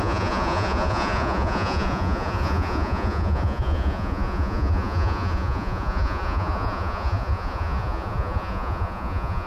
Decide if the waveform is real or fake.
fake